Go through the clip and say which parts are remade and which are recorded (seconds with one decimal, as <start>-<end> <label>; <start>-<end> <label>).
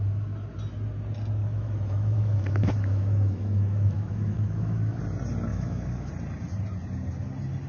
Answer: 0.0-1.4 recorded; 1.4-5.0 remade; 5.0-5.5 recorded; 5.5-6.1 remade; 6.1-7.7 recorded